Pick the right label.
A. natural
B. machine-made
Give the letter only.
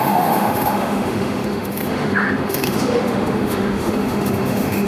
B